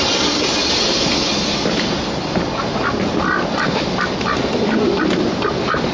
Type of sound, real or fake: real